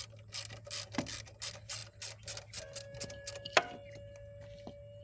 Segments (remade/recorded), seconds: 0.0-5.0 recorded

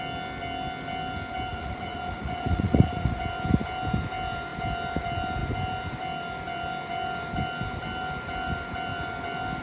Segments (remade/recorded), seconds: 0.0-1.5 recorded; 1.5-3.2 remade; 3.2-9.6 recorded

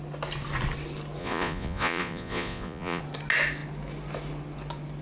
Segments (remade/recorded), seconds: 0.0-1.2 recorded; 1.2-3.0 remade; 3.0-5.0 recorded

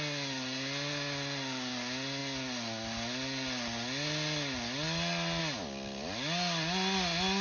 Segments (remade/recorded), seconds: 0.0-7.4 recorded

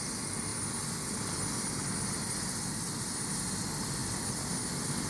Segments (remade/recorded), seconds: 0.0-5.1 recorded

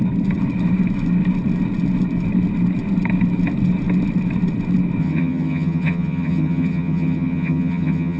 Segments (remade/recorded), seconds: 0.0-5.0 recorded; 5.0-8.2 remade

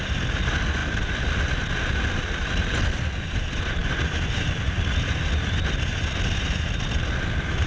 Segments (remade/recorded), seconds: 0.0-7.7 recorded